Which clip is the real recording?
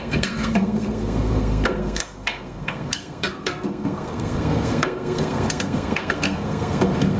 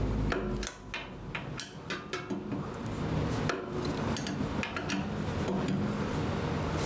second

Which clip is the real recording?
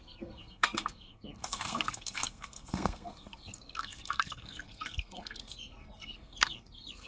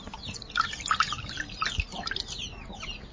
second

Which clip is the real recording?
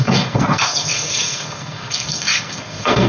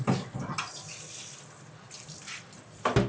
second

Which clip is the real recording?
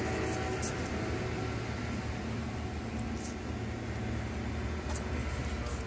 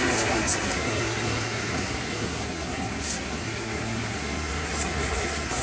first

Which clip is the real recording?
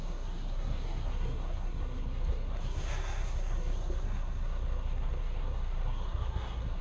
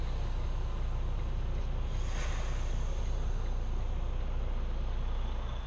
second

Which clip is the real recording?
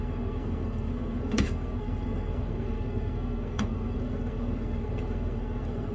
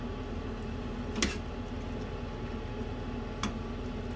second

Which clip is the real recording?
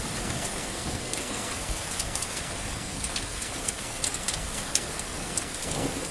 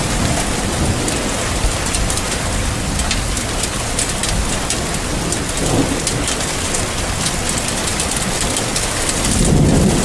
second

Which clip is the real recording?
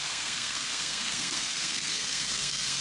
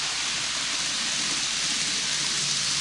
second